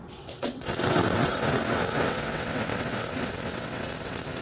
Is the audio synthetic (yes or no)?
yes